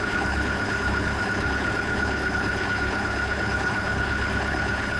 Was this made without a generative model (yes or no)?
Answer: no